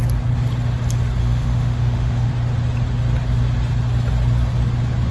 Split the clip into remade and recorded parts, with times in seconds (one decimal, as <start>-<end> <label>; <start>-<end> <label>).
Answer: 0.0-1.2 recorded; 1.2-2.3 remade; 2.3-5.1 recorded